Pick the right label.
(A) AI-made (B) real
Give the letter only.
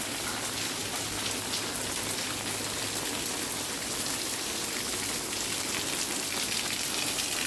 B